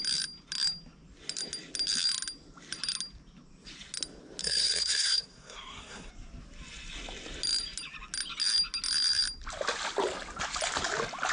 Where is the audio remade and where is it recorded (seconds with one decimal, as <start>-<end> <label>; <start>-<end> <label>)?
0.0-4.4 recorded; 4.4-6.1 remade; 6.1-11.3 recorded

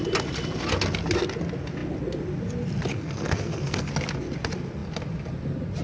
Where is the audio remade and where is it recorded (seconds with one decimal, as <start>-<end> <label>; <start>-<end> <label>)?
0.0-2.9 recorded; 2.9-3.9 remade; 3.9-5.8 recorded

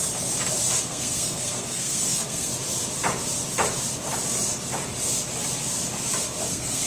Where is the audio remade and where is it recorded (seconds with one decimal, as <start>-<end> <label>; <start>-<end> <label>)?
0.0-0.8 recorded; 0.8-2.5 remade; 2.5-6.5 recorded; 6.5-6.9 remade

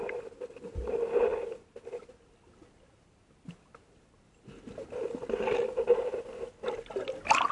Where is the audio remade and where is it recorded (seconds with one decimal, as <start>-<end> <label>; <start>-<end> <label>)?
0.0-7.5 recorded

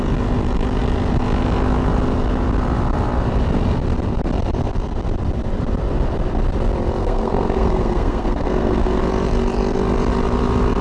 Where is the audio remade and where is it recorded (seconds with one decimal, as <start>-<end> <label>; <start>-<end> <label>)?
0.0-7.0 recorded; 7.0-9.0 remade; 9.0-10.8 recorded

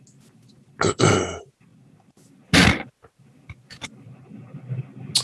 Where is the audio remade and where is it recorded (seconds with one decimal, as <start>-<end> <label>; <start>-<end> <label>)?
0.0-5.2 recorded

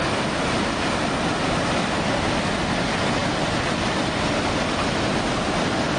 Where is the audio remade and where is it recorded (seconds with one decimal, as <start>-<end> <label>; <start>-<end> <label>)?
0.0-6.0 recorded

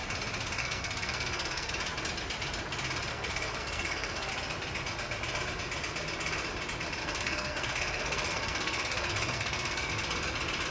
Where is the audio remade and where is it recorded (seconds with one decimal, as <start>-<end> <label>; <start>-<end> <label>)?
0.0-0.6 recorded; 0.6-1.7 remade; 1.7-3.1 recorded; 3.1-4.3 remade; 4.3-7.0 recorded; 7.0-9.9 remade; 9.9-10.7 recorded